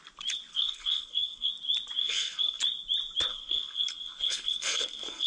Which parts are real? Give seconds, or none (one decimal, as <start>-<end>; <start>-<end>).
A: 0.0-0.5; 1.5-2.0; 2.6-3.3